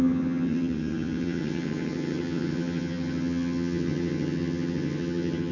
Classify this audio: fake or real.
fake